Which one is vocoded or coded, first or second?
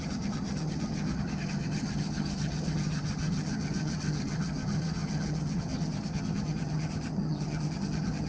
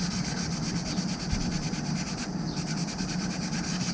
first